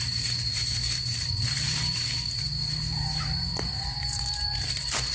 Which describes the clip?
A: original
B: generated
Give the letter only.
B